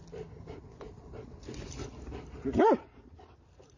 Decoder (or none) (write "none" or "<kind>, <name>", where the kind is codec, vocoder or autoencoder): none